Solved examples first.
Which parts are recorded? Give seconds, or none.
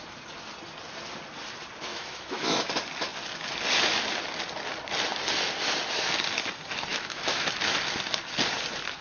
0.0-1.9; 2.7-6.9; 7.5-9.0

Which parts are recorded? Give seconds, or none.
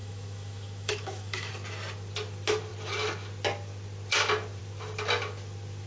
1.5-5.9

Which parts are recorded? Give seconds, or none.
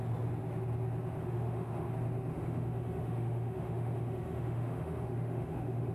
0.0-1.2; 1.9-2.3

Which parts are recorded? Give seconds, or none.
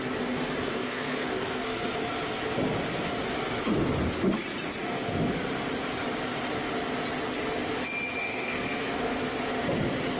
0.0-0.7; 1.9-8.2; 9.3-10.2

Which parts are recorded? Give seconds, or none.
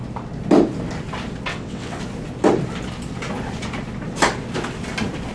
0.0-1.5; 2.0-5.3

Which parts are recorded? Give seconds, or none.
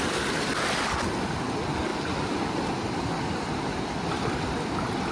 0.0-5.1